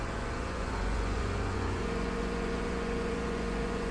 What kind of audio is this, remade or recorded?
remade